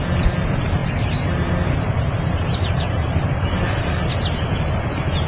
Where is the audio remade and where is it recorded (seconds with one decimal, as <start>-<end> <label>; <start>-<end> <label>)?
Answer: 0.0-0.8 recorded; 0.8-3.7 remade; 3.7-5.3 recorded